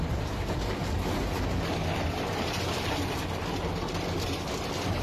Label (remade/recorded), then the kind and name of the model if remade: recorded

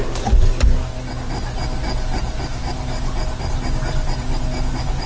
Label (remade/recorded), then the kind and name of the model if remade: recorded